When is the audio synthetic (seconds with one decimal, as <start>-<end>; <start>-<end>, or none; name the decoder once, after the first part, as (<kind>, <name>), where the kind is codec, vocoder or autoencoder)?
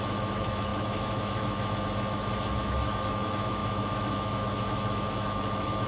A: 0.0-5.9 (autoencoder, DAC-VAE)